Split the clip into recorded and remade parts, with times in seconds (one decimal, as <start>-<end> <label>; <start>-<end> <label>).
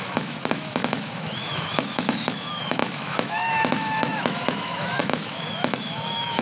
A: 0.0-6.4 remade